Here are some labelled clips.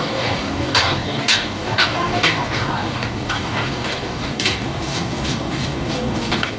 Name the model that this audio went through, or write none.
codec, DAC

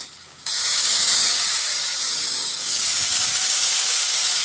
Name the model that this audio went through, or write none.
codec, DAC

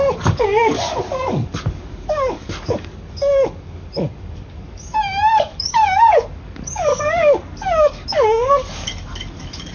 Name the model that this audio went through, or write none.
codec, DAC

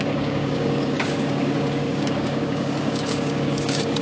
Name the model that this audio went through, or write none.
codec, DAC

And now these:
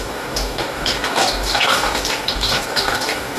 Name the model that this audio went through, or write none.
codec, DAC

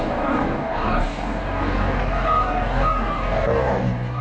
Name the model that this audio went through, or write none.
codec, DAC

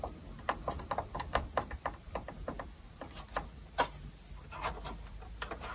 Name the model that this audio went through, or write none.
none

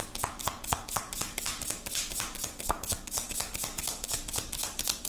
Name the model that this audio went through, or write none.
codec, DAC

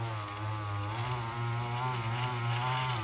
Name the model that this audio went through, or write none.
none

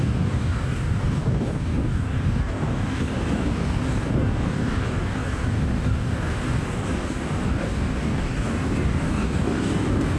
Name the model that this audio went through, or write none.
codec, DAC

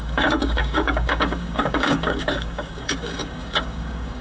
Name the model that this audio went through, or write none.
codec, DAC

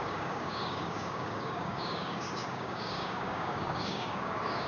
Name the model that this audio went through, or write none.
codec, DAC